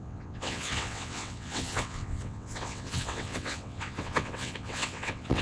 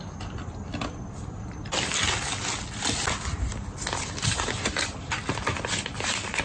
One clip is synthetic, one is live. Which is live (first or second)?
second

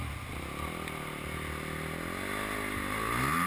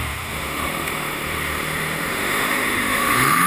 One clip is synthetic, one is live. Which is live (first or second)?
first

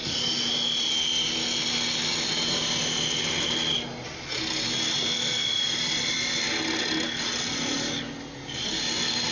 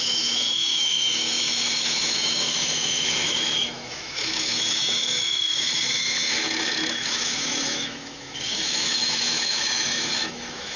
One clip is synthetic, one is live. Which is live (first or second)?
first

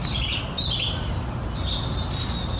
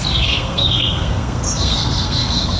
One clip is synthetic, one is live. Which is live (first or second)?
first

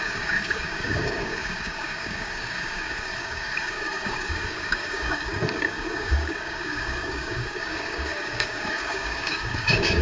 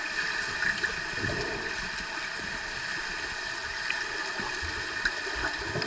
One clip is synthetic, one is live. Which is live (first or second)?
second